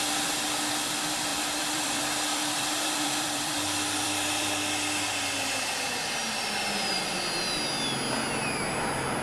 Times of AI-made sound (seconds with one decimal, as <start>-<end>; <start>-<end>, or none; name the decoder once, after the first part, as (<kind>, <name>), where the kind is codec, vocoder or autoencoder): 1.3-4.6 (vocoder, BigVGAN v2)